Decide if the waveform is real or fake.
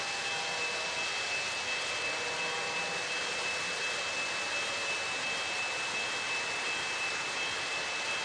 real